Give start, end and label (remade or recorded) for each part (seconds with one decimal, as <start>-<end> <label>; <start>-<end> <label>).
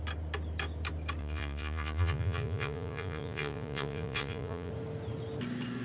0.0-1.2 recorded; 1.2-4.7 remade; 4.7-5.8 recorded